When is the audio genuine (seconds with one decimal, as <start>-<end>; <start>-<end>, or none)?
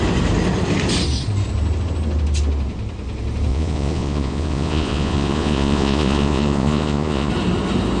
0.0-3.5; 7.3-8.0